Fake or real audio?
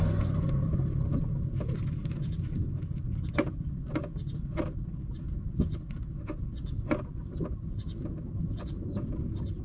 real